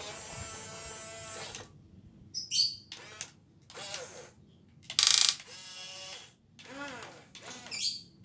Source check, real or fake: real